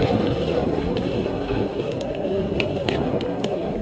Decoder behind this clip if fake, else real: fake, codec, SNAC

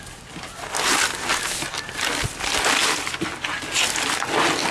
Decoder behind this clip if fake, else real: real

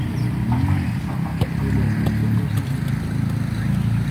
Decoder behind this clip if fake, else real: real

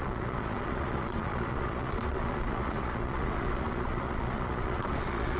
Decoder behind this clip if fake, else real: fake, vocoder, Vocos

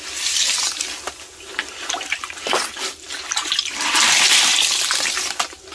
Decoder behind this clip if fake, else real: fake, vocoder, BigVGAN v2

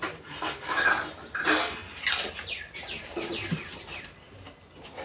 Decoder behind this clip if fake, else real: fake, vocoder, BigVGAN v2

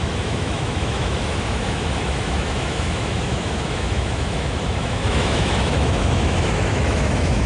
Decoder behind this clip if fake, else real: fake, autoencoder, DAC-VAE